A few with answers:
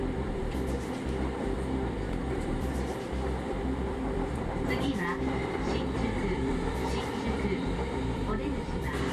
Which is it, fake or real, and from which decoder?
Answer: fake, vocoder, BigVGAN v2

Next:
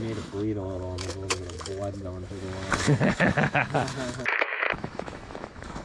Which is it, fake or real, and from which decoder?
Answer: fake, autoencoder, DAC-VAE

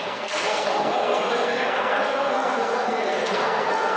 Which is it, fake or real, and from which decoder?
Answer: fake, codec, SNAC